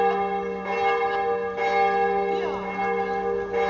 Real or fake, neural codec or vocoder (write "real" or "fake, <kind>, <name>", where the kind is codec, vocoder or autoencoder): real